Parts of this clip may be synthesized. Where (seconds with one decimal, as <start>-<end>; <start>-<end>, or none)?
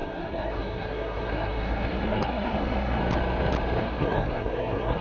0.0-3.0; 3.8-5.0